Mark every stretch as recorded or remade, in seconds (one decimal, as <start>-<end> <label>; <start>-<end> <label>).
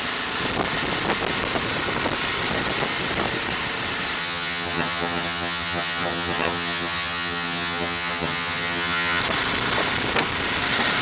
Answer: 0.0-4.2 recorded; 4.2-9.2 remade; 9.2-11.0 recorded